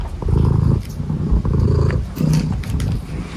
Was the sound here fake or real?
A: real